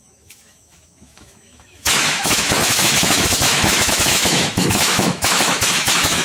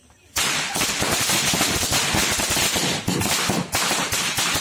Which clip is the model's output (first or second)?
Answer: first